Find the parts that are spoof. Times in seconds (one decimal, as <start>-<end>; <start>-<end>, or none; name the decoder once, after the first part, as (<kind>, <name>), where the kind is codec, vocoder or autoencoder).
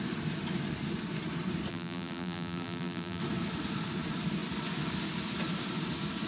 1.7-3.2 (vocoder, BigVGAN v2)